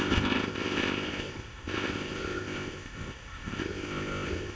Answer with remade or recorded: remade